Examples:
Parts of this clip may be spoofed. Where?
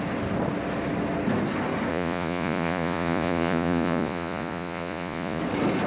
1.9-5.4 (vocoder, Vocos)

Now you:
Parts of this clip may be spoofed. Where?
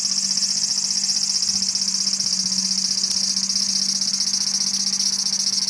none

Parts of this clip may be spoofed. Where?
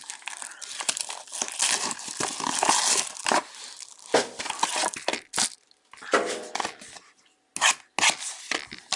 none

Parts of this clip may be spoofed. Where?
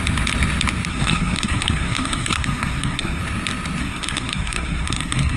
0.9-3.2 (codec, SNAC); 3.8-5.4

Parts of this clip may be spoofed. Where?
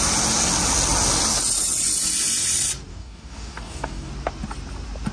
2.9-4.1 (codec, DAC)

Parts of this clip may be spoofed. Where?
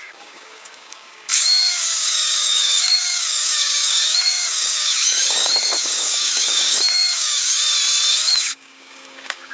0.0-7.6 (codec, DAC); 8.1-9.5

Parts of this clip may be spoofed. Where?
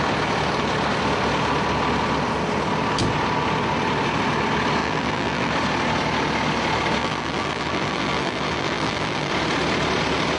4.8-5.5 (vocoder, BigVGAN v2); 7.0-9.3